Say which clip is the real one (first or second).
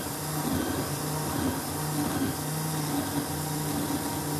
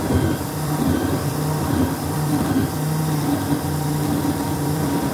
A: first